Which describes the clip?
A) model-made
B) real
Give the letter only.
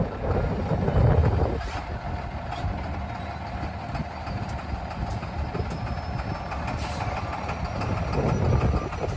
B